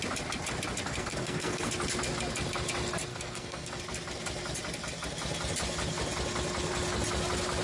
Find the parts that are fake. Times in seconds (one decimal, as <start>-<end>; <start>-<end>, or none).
0.9-1.7; 3.1-3.8